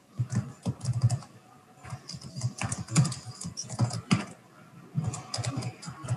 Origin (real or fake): real